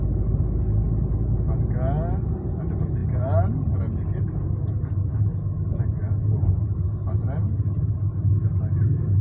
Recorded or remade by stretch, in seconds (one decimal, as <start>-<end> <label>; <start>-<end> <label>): 0.0-9.2 recorded